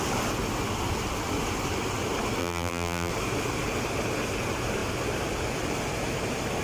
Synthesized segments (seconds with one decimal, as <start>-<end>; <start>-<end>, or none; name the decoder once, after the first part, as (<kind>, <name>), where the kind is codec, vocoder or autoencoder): 2.4-3.1 (vocoder, BigVGAN v2)